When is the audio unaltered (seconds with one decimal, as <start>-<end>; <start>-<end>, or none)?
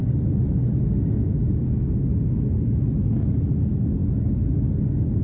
0.0-5.2